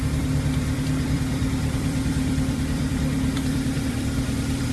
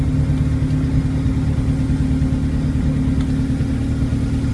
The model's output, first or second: first